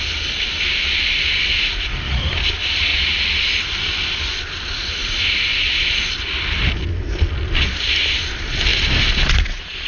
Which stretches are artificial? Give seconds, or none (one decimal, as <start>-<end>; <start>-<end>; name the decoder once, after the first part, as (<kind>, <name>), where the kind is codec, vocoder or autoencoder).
none